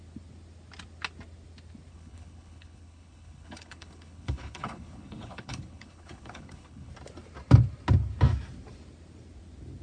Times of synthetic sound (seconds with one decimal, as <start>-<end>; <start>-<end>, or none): 1.9-6.9